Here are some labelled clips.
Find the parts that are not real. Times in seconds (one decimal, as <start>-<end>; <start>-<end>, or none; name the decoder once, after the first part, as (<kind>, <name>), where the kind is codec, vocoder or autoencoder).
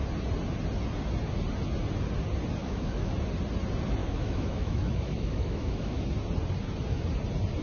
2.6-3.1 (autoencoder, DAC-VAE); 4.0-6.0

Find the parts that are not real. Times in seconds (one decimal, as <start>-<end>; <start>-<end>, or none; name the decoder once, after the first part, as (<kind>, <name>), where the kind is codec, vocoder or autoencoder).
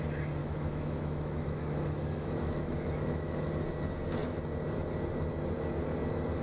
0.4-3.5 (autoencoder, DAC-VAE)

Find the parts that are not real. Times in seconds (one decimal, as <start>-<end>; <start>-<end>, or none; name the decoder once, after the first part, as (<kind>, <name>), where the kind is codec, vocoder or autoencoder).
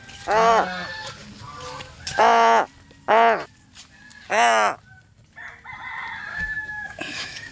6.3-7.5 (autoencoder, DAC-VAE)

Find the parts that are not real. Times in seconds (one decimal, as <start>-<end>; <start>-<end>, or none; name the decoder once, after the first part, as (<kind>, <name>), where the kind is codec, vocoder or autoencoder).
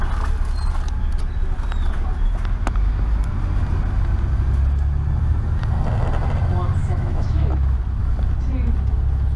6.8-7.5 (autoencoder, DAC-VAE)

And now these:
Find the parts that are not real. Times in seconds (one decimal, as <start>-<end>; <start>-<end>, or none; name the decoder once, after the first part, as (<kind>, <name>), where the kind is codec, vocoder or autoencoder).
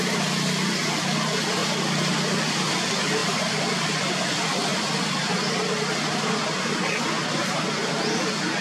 none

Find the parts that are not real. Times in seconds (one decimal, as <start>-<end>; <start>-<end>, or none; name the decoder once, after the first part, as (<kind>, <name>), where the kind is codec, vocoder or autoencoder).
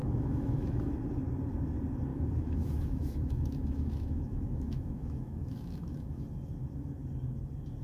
0.0-0.9 (autoencoder, DAC-VAE); 2.1-6.2